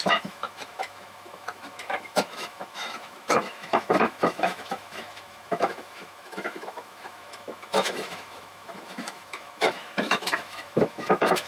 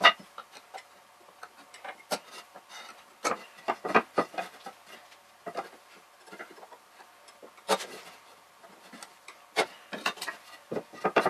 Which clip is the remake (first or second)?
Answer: first